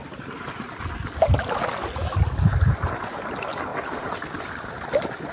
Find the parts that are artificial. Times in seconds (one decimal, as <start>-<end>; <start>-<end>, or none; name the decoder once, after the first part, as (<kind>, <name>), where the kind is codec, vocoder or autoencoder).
0.0-0.7 (vocoder, BigVGAN v2); 3.7-4.5